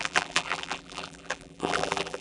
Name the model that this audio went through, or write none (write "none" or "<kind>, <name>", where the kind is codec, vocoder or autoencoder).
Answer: vocoder, BigVGAN v2